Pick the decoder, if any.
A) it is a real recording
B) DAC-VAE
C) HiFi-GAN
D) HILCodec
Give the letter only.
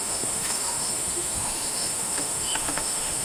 B